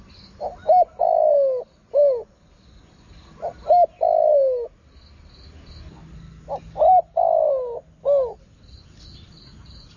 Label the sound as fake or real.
real